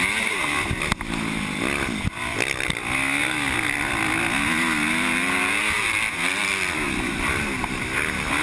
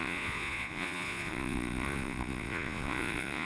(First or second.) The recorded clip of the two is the first